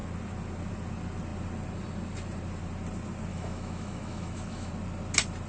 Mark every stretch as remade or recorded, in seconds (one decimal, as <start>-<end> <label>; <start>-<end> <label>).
0.0-3.3 recorded; 3.3-4.7 remade; 4.7-5.5 recorded